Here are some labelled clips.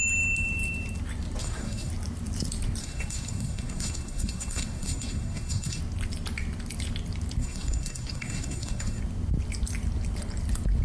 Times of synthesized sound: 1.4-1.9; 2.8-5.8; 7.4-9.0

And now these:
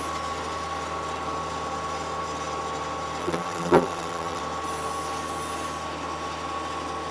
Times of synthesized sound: 3.2-4.4

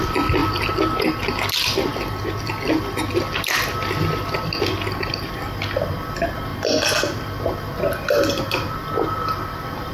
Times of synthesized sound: none

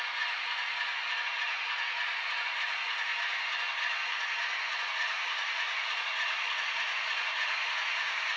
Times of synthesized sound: 0.0-3.1; 4.9-8.4